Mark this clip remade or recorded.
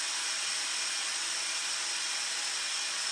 recorded